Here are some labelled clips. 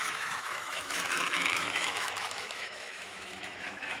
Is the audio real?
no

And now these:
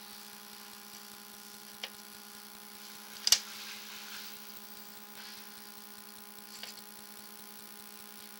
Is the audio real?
yes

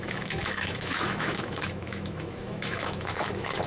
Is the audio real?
no